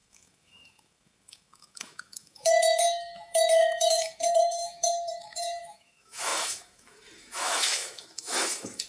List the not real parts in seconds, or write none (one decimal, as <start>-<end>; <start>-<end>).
0.0-8.9